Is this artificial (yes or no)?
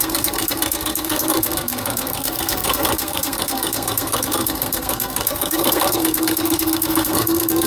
yes